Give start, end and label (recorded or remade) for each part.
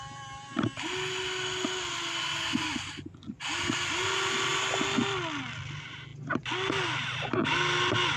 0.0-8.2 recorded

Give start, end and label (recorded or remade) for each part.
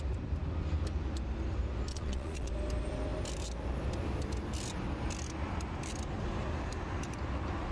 0.0-1.9 recorded; 1.9-2.5 remade; 2.5-7.7 recorded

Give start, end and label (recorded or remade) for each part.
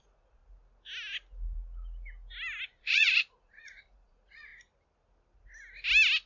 0.0-0.4 remade; 0.4-2.8 recorded; 2.8-4.5 remade; 4.5-6.3 recorded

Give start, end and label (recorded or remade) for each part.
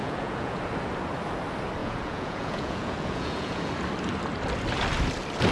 0.0-0.6 remade; 0.6-1.8 recorded; 1.8-3.7 remade; 3.7-5.5 recorded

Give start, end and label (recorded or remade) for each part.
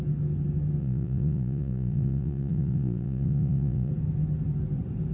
0.0-0.8 recorded; 0.8-3.9 remade; 3.9-5.1 recorded